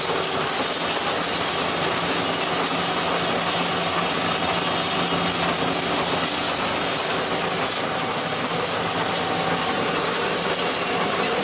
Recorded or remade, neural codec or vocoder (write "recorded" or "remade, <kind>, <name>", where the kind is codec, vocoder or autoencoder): recorded